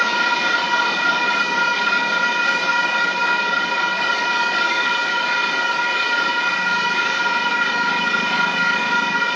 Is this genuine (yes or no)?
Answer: no